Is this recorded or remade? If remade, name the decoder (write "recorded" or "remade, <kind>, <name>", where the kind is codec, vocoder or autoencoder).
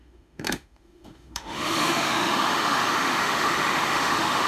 remade, autoencoder, DAC-VAE